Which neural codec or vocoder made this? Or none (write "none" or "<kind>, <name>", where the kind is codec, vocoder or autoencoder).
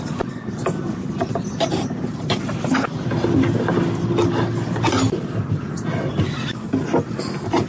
none